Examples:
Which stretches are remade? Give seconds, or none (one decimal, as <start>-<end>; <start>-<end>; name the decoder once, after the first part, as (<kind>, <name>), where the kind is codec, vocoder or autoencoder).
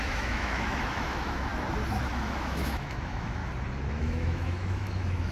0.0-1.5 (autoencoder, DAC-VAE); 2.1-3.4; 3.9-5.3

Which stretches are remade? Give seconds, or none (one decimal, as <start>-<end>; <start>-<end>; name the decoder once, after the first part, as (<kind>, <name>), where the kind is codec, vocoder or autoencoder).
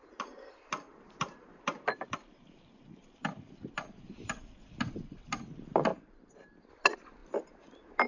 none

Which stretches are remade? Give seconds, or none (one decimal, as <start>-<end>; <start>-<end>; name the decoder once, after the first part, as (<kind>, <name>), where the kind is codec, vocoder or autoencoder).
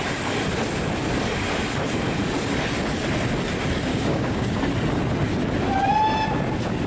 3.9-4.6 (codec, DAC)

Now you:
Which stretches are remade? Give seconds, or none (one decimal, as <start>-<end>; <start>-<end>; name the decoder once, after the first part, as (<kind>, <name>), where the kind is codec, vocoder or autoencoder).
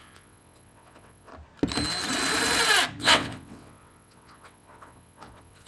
0.0-1.3 (vocoder, WaveNeXt); 3.0-5.7